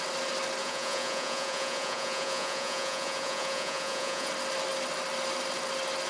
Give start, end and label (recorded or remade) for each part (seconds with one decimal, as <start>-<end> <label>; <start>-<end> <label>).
0.0-0.6 recorded; 0.6-4.3 remade; 4.3-6.1 recorded